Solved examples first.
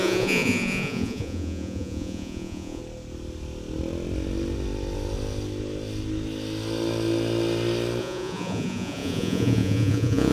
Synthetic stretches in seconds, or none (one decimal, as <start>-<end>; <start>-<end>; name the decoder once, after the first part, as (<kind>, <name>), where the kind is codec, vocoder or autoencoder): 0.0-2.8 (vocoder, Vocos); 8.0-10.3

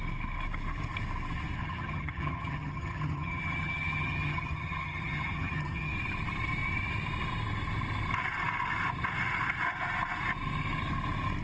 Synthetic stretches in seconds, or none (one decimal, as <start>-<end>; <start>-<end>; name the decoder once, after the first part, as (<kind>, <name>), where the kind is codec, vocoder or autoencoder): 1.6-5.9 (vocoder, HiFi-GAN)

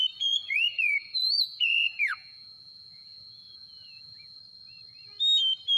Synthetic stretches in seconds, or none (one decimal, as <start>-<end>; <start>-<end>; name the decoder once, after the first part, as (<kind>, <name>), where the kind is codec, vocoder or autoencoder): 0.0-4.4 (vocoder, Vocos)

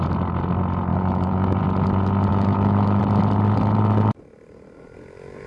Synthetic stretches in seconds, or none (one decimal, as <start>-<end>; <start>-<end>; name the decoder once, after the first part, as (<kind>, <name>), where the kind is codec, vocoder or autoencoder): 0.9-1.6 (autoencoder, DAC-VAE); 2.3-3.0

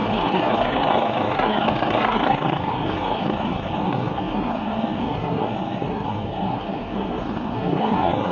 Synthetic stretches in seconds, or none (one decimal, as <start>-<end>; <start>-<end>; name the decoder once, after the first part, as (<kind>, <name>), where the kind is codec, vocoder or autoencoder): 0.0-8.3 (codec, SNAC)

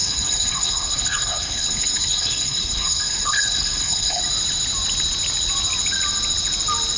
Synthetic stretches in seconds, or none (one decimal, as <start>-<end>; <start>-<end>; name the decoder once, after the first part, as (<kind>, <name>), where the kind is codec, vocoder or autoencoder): 0.0-4.2 (codec, HILCodec)

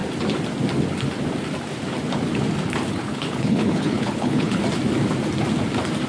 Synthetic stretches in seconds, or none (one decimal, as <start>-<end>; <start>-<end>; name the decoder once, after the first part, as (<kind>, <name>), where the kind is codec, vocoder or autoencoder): 2.9-4.6 (codec, HILCodec)

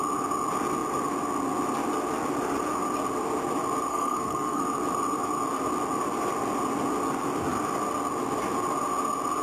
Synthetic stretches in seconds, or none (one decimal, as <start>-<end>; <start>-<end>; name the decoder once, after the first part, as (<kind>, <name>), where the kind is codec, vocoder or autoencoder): 3.9-4.6 (codec, SNAC)